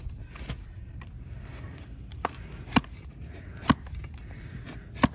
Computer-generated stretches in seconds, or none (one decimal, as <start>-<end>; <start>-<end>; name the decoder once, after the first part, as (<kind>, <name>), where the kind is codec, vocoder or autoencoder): none